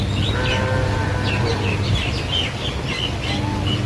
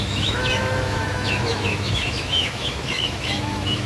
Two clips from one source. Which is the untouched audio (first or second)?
first